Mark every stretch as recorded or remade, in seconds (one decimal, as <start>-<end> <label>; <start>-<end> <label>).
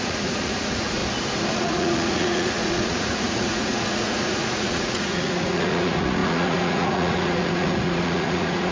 0.0-1.0 remade; 1.0-1.5 recorded; 1.5-8.7 remade